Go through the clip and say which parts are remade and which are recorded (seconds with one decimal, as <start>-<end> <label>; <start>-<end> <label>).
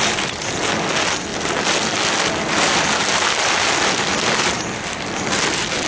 0.0-5.9 recorded